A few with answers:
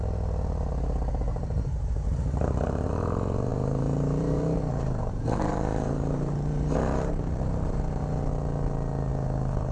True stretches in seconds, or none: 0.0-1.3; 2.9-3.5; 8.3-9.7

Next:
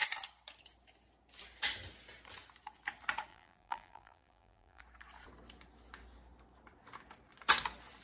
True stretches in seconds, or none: 0.0-3.3; 4.8-8.0